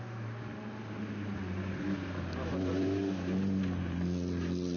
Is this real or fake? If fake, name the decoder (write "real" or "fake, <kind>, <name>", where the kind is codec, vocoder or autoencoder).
real